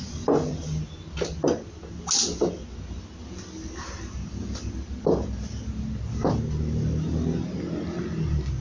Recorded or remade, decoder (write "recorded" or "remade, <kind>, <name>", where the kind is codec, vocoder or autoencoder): recorded